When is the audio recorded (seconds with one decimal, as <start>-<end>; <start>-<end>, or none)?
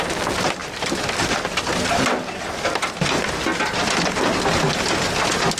0.0-5.6